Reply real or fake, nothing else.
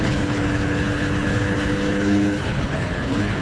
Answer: fake